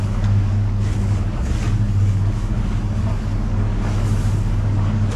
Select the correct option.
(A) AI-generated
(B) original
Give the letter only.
A